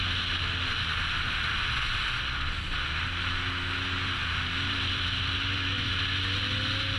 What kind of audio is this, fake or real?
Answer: real